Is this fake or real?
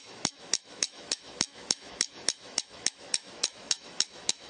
fake